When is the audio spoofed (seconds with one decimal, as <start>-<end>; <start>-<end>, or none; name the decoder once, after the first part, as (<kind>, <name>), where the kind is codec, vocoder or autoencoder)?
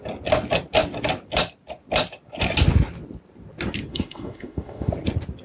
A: 3.9-4.9 (autoencoder, DAC-VAE)